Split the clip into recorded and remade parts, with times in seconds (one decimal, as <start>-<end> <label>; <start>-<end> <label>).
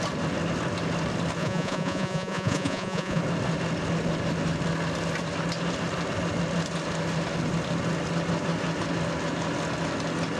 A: 0.0-1.4 recorded; 1.4-3.2 remade; 3.2-10.4 recorded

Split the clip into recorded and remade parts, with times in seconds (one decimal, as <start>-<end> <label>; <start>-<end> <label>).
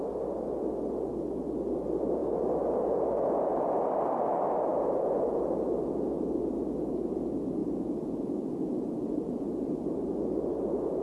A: 0.0-7.6 recorded; 7.6-9.7 remade; 9.7-11.0 recorded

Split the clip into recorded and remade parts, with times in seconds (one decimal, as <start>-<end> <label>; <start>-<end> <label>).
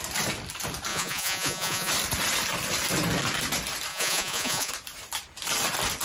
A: 0.0-0.9 recorded; 0.9-1.9 remade; 1.9-3.9 recorded; 3.9-4.7 remade; 4.7-6.0 recorded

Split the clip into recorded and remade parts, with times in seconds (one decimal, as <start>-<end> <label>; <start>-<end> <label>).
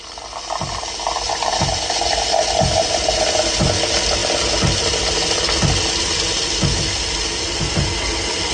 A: 0.0-8.5 recorded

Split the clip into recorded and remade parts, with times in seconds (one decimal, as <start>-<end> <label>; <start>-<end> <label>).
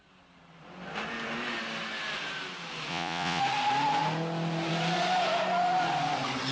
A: 0.0-2.9 recorded; 2.9-3.4 remade; 3.4-6.5 recorded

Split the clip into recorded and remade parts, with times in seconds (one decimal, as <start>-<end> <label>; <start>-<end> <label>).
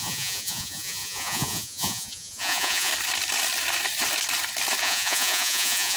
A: 0.0-2.9 remade; 2.9-4.8 recorded; 4.8-6.0 remade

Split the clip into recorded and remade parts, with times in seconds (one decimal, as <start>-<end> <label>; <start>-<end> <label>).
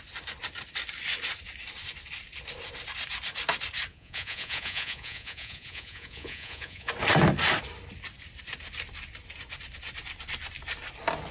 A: 0.0-3.9 recorded; 3.9-6.9 remade; 6.9-11.3 recorded